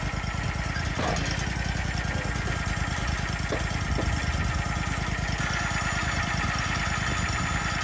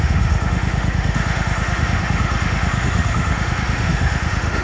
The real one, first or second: first